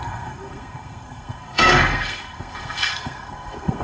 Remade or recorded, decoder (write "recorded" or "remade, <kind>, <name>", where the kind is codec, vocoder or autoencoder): remade, codec, SNAC